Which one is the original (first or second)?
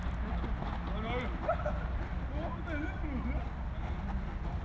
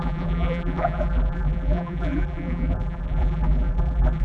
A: first